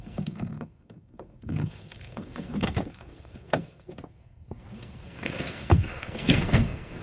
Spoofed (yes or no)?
yes